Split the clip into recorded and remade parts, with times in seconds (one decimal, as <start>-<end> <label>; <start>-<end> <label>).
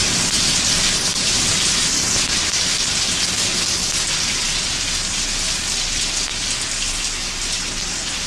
0.0-2.5 remade; 2.5-8.3 recorded